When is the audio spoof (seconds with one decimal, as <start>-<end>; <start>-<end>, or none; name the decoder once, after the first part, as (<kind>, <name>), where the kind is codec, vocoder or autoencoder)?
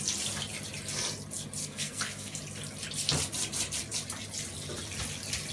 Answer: 1.6-2.4 (codec, SNAC)